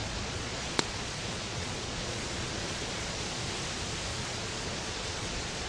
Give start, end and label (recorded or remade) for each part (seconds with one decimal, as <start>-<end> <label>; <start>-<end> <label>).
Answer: 0.0-3.4 remade; 3.4-4.1 recorded; 4.1-5.7 remade